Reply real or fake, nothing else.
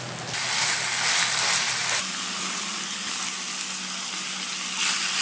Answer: real